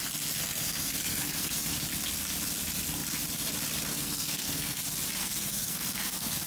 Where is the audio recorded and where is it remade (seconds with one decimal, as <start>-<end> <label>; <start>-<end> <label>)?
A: 0.0-0.4 recorded; 0.4-1.7 remade; 1.7-3.9 recorded; 3.9-4.8 remade; 4.8-5.2 recorded; 5.2-6.5 remade